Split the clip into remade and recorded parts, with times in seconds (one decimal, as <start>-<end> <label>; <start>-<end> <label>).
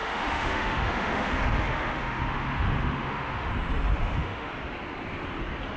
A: 0.0-3.5 remade; 3.5-3.9 recorded; 3.9-4.5 remade; 4.5-5.8 recorded